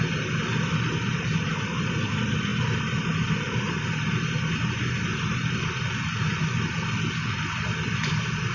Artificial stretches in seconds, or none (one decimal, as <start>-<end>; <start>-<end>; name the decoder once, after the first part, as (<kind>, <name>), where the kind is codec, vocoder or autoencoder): none